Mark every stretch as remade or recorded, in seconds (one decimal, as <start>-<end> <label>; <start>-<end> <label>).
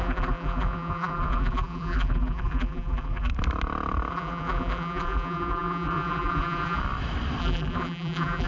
0.0-3.3 remade; 3.3-4.1 recorded; 4.1-6.8 remade; 6.8-7.4 recorded; 7.4-8.5 remade